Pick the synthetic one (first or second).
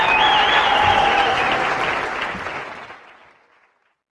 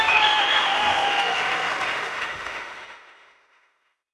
second